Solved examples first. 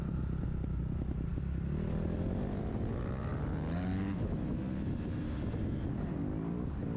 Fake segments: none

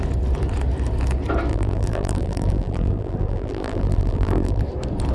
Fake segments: 1.5-4.6 (vocoder, BigVGAN v2)

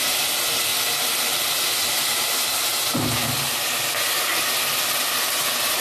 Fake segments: none

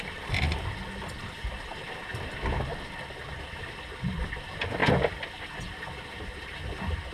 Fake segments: 1.5-2.2 (vocoder, BigVGAN v2)